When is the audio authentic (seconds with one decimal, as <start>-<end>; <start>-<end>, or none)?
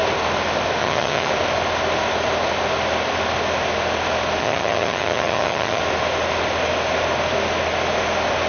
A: 0.0-0.8; 1.3-4.4; 5.8-8.5